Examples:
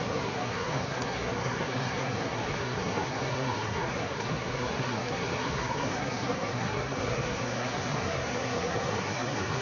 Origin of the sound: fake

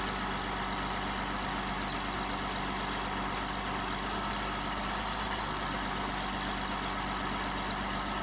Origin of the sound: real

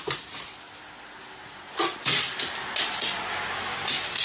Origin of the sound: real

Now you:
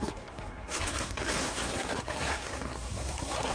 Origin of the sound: fake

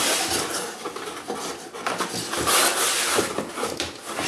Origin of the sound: real